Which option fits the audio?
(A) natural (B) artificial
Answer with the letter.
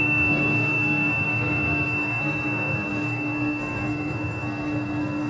B